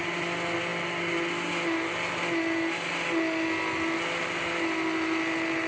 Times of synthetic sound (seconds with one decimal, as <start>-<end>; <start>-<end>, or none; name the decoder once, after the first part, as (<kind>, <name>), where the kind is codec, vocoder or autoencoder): none